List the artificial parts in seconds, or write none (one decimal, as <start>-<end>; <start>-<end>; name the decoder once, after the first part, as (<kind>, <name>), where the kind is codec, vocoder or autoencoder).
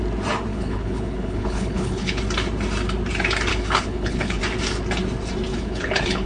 0.5-2.2 (codec, HILCodec); 3.5-4.4; 5.5-6.3